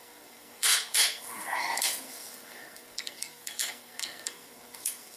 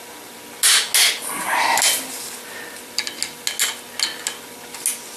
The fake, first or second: first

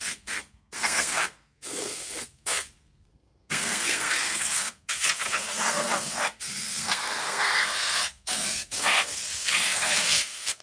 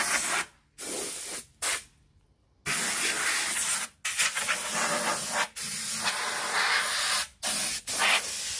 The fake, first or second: first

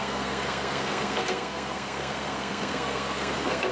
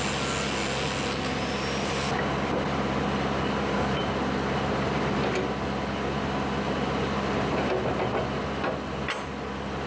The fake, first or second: first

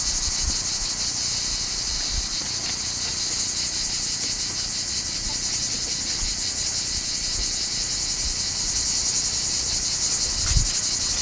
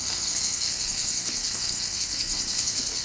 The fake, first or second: second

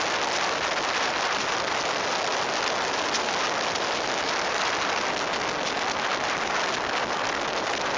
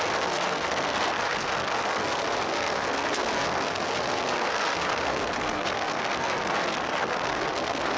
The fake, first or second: second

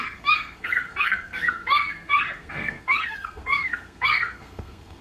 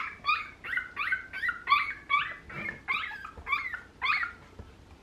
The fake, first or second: first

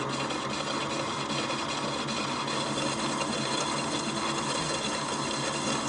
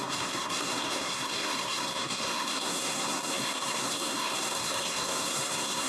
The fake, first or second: second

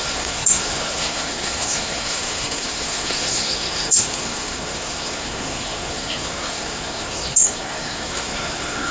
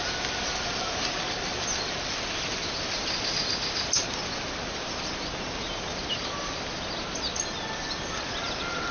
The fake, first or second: first